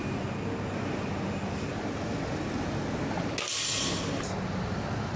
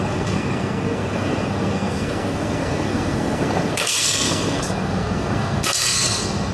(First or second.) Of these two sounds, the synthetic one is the second